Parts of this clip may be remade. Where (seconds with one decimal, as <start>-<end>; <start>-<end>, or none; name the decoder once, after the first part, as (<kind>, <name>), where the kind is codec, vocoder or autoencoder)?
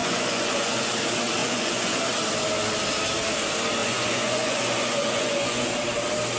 0.0-0.9 (vocoder, Vocos); 1.4-2.0; 3.8-5.7